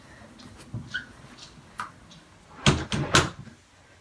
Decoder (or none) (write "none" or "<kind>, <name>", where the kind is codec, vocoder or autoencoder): none